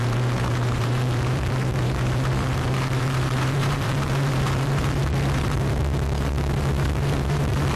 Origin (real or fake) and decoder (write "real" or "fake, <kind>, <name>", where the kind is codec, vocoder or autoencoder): fake, vocoder, BigVGAN v2